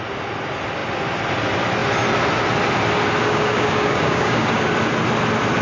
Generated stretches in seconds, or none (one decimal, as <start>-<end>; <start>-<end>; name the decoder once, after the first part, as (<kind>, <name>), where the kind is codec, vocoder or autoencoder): 3.2-4.6 (codec, DAC)